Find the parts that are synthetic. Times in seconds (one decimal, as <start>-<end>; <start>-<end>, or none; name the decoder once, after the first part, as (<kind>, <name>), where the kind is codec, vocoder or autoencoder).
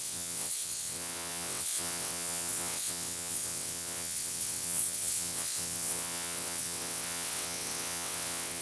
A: 0.0-8.6 (vocoder, WaveNeXt)